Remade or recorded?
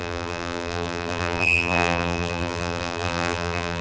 remade